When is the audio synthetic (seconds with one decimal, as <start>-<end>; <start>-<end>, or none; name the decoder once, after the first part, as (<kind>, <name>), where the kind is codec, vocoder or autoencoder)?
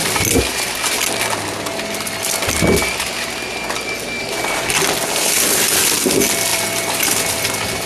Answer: none